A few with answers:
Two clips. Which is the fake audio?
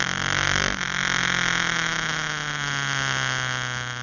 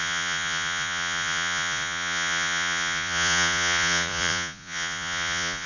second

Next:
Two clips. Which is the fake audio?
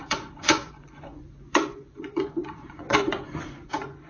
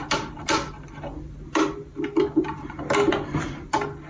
first